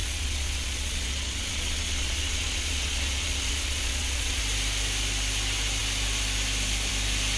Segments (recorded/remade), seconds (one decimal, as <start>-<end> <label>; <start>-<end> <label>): 0.0-4.4 remade; 4.4-7.4 recorded